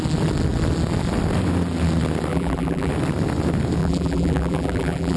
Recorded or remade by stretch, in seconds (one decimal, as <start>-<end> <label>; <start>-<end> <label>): 0.0-2.3 recorded; 2.3-2.9 remade; 2.9-3.8 recorded; 3.8-5.2 remade

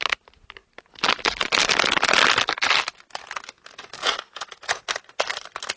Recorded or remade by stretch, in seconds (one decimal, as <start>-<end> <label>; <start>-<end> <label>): 0.0-4.0 recorded; 4.0-4.8 remade; 4.8-5.8 recorded

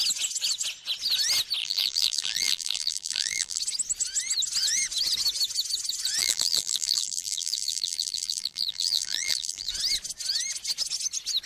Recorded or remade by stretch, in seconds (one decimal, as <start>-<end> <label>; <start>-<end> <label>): 0.0-1.6 recorded; 1.6-3.6 remade; 3.6-6.2 recorded; 6.2-9.7 remade; 9.7-11.5 recorded

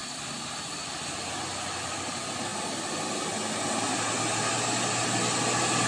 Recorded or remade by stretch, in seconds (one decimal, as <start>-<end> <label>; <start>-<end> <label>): 0.0-5.9 recorded

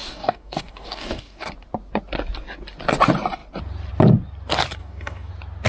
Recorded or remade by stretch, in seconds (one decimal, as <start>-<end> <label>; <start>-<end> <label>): 0.0-1.5 remade; 1.5-4.8 recorded; 4.8-5.3 remade; 5.3-5.7 recorded

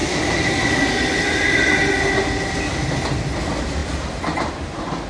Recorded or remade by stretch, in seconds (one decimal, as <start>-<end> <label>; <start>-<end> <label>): 0.0-5.1 recorded

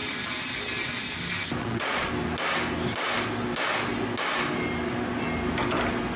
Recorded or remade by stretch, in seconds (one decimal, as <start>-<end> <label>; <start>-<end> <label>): 0.0-1.6 recorded; 1.6-2.1 remade; 2.1-6.2 recorded

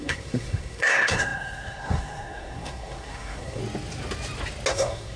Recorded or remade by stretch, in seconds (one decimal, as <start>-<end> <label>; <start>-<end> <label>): 0.0-3.6 remade; 3.6-4.7 recorded; 4.7-5.2 remade